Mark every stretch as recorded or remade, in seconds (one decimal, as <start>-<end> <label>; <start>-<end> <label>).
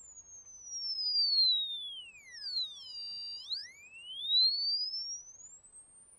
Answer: 0.0-6.2 recorded